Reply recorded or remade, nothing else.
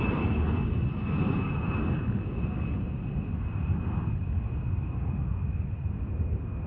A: recorded